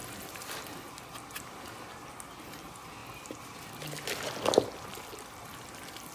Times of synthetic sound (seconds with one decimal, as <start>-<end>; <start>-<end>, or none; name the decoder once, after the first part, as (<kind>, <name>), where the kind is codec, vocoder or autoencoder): none